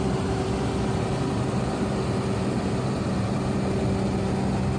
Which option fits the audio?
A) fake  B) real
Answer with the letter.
B